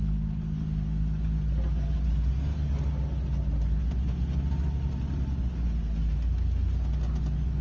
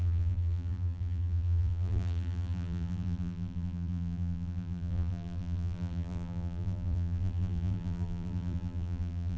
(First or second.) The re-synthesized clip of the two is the second